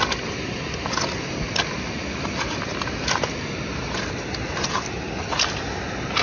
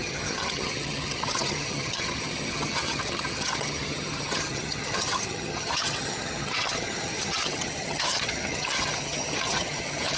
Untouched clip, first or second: first